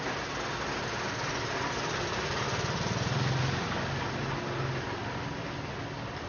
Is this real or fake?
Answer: real